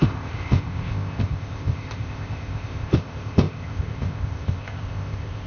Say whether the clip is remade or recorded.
remade